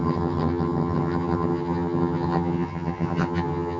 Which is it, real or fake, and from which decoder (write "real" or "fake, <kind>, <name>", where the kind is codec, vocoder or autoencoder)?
fake, vocoder, HiFi-GAN